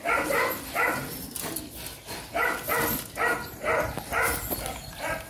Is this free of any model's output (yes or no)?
yes